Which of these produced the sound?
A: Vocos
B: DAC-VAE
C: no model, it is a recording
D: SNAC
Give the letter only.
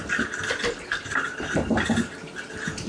C